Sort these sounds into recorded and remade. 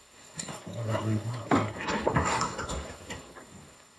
remade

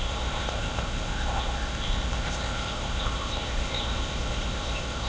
remade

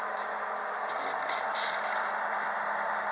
recorded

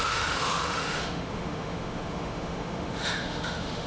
remade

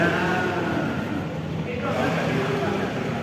recorded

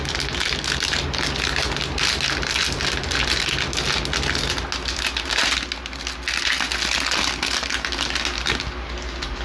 recorded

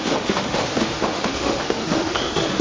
remade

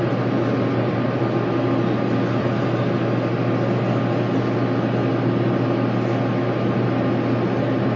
recorded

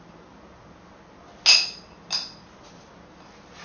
recorded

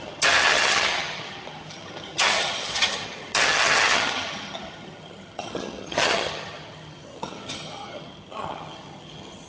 remade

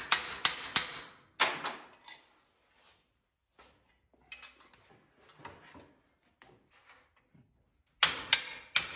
recorded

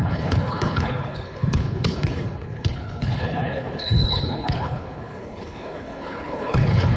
remade